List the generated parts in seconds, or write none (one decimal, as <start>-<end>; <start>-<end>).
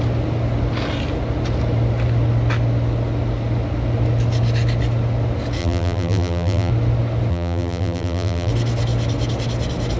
5.6-6.7; 7.3-8.5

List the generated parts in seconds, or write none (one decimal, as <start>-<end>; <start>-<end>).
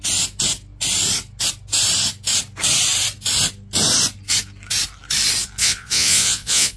5.6-6.8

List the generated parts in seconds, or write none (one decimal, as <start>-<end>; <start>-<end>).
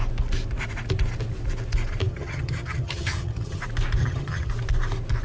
2.1-3.6; 4.0-4.5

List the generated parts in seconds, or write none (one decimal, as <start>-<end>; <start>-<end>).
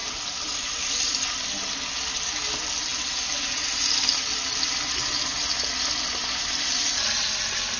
0.0-1.5; 6.2-6.8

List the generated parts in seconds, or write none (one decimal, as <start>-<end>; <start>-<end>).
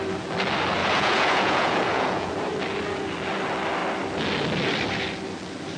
0.8-2.3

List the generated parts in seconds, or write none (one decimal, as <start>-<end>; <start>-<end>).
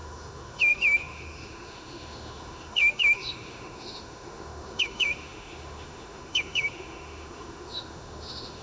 0.0-8.6